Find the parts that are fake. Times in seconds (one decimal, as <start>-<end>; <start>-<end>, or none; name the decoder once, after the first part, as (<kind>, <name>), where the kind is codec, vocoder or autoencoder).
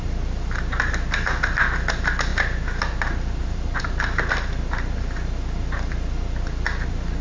none